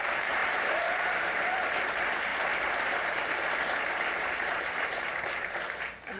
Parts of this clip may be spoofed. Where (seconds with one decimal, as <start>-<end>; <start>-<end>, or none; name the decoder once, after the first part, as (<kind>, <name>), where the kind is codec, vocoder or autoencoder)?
0.0-6.2 (vocoder, BigVGAN v2)